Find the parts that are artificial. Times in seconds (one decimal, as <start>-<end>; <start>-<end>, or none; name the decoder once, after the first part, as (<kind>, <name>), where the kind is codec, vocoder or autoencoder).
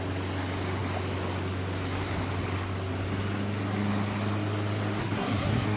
5.0-5.8 (codec, SNAC)